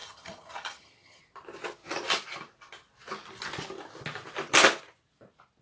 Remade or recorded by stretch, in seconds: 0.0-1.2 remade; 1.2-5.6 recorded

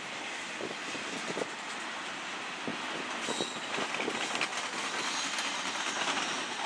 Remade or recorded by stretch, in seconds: 0.0-6.7 recorded